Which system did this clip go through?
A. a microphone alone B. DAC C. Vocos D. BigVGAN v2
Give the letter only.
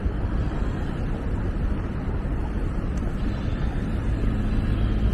A